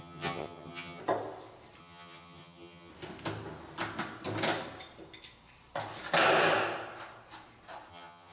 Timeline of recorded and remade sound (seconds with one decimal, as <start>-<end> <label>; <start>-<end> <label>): 0.0-1.0 remade; 1.0-1.8 recorded; 1.8-2.9 remade; 2.9-7.9 recorded; 7.9-8.3 remade